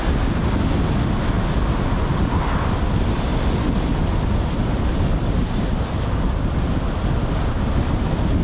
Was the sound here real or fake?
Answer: real